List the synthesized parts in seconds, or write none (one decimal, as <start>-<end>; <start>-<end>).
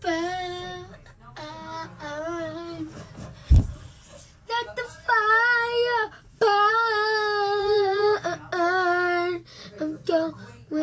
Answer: 7.6-8.5